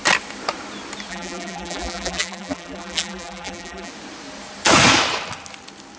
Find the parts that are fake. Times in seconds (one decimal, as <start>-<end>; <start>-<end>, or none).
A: 1.1-3.9